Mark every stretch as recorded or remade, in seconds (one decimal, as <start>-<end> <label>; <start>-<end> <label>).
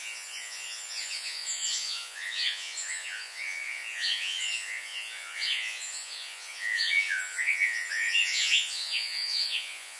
0.0-10.0 remade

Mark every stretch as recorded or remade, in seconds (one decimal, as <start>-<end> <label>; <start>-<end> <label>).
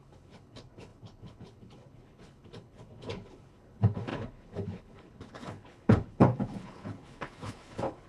0.0-8.1 remade